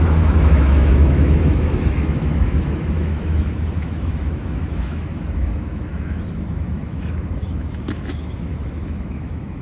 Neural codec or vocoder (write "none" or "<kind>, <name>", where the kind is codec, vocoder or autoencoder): autoencoder, DAC-VAE